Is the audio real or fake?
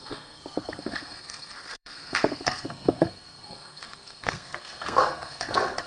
fake